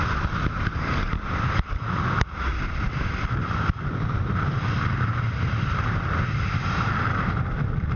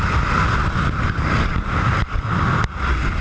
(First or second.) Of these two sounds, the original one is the second